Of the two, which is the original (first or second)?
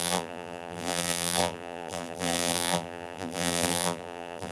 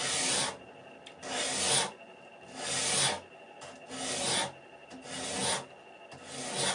second